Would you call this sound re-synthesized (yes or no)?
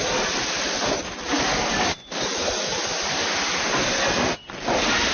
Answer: no